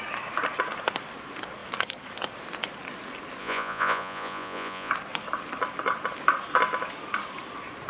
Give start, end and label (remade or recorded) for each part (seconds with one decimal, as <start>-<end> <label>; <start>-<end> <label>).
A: 0.0-3.4 recorded; 3.4-4.9 remade; 4.9-7.9 recorded